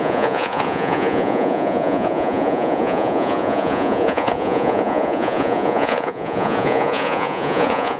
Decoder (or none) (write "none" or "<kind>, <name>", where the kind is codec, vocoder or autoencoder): vocoder, Vocos